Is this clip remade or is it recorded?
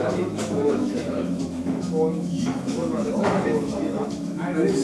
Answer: remade